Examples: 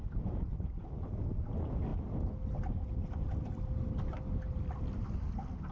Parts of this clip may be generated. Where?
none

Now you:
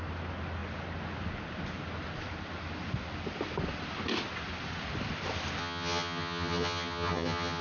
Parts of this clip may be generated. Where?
5.6-7.6 (vocoder, HiFi-GAN)